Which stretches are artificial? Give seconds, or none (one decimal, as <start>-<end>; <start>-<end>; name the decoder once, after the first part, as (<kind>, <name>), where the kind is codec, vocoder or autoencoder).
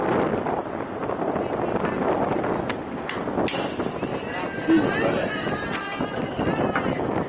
none